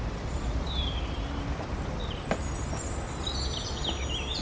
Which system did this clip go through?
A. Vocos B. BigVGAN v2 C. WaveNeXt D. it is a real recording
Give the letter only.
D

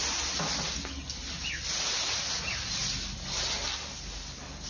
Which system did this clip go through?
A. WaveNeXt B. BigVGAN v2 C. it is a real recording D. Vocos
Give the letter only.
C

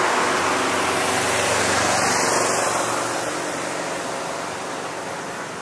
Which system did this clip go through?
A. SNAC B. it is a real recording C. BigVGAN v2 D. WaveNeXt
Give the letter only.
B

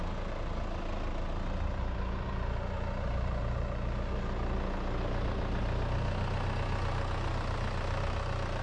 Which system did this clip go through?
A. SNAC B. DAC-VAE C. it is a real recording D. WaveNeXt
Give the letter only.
C